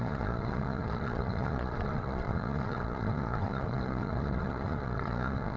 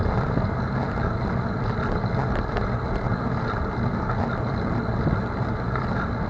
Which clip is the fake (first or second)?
first